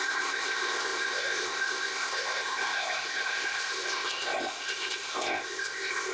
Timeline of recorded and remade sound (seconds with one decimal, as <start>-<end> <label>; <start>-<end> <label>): 0.0-6.1 remade